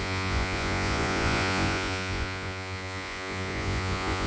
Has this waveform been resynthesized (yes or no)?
yes